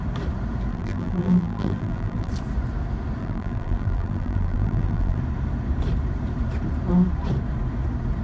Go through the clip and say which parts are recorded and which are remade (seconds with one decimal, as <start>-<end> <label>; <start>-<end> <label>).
0.0-0.7 recorded; 0.7-2.3 remade; 2.3-3.2 recorded; 3.2-5.2 remade; 5.2-8.2 recorded